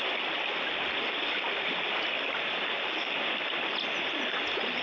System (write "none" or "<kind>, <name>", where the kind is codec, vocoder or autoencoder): none